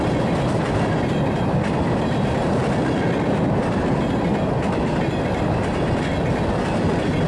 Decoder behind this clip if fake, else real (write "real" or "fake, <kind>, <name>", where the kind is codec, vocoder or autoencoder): fake, vocoder, BigVGAN v2